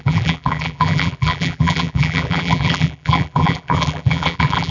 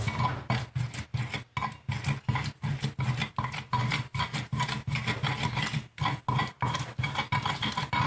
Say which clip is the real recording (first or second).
second